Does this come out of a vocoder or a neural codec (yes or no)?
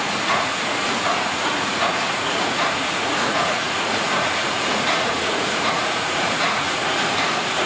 yes